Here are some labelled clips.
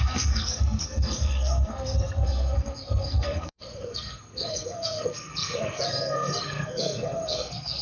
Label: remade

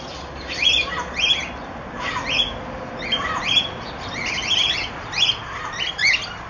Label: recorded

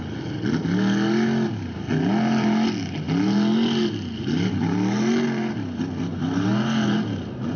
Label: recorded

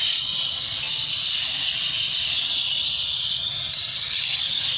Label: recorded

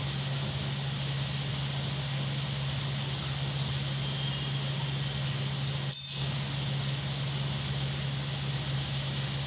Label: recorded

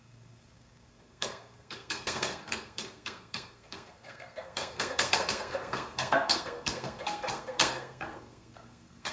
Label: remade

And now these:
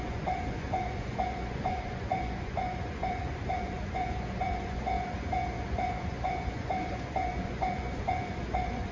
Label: remade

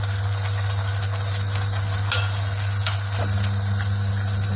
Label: recorded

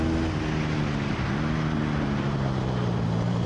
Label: recorded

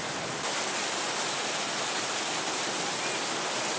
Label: recorded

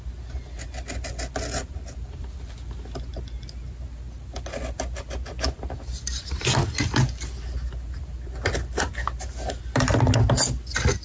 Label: recorded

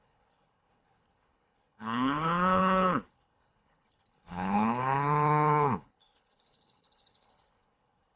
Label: remade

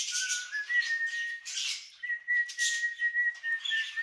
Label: remade